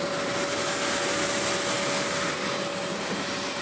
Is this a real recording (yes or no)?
yes